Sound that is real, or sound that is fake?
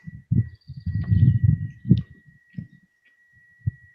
fake